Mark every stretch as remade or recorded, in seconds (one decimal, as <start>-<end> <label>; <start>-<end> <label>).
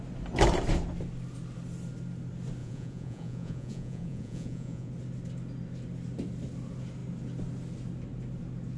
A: 0.0-2.6 recorded; 2.6-4.9 remade; 4.9-8.8 recorded